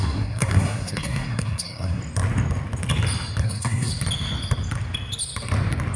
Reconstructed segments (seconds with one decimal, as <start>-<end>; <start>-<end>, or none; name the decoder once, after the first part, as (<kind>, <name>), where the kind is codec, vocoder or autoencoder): 0.0-2.0 (codec, SNAC); 3.4-3.9